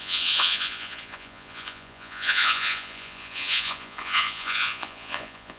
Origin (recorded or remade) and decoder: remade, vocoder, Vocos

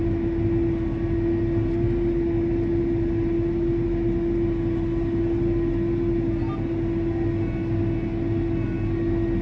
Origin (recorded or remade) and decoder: recorded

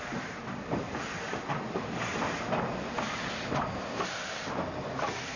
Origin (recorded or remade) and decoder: recorded